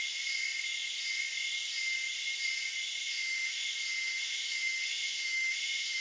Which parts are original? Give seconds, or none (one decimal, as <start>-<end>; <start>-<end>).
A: 0.0-3.0